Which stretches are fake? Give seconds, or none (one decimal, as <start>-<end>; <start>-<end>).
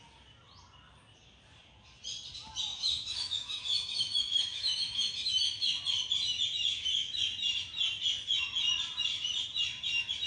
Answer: 2.7-5.8; 6.7-7.2